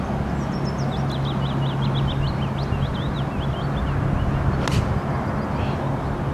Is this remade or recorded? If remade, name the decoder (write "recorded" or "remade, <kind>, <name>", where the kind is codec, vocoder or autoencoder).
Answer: recorded